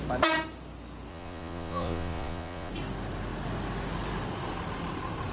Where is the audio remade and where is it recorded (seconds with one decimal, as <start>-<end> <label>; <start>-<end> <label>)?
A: 0.0-1.1 recorded; 1.1-2.7 remade; 2.7-5.3 recorded